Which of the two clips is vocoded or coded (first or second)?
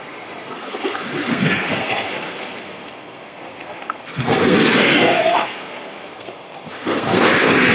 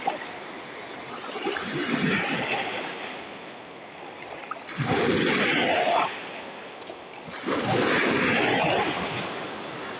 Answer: first